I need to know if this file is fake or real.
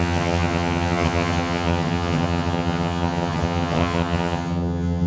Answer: fake